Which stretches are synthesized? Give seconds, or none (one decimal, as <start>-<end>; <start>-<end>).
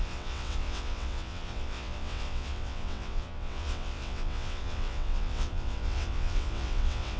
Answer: 0.0-7.2